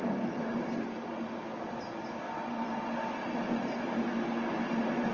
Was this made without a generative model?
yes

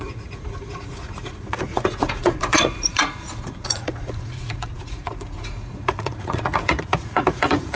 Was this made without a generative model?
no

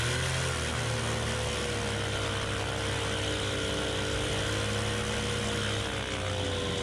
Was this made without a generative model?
yes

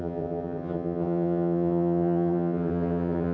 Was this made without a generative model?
no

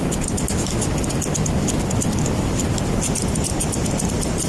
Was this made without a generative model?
yes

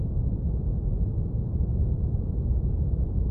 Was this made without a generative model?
yes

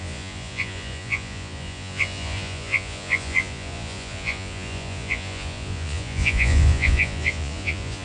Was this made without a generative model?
no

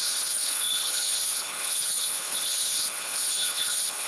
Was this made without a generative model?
no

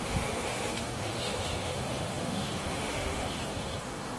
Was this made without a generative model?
no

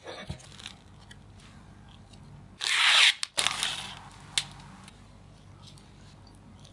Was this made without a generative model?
yes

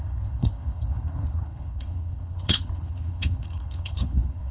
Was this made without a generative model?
no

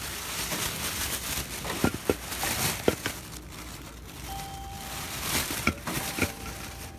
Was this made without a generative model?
no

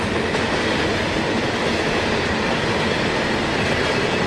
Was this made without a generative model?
yes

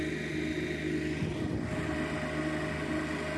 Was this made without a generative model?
yes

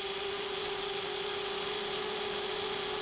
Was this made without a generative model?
yes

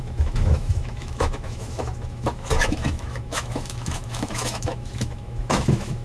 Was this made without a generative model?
no